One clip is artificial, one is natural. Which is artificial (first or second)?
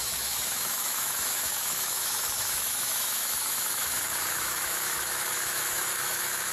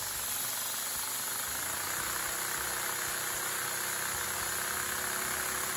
first